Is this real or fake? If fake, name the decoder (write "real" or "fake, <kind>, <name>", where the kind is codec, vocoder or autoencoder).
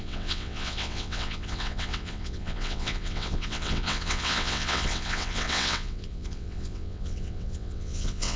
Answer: fake, vocoder, WaveNeXt